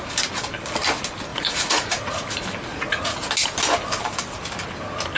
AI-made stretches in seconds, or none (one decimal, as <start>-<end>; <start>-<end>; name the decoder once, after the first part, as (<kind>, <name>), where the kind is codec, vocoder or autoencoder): 1.3-2.3 (vocoder, Vocos); 2.7-3.3